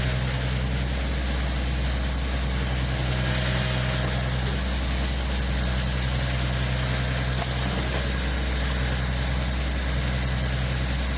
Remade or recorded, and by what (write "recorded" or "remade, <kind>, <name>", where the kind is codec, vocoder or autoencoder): recorded